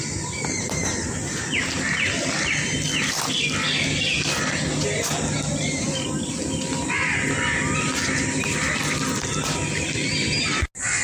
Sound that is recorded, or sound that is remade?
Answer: recorded